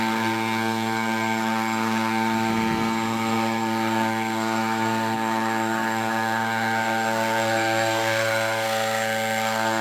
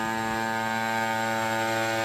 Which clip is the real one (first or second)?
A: second